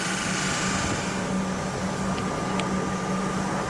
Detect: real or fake real